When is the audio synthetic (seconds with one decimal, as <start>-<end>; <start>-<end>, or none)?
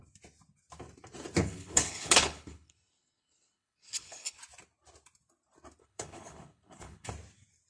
1.4-4.4; 5.8-7.1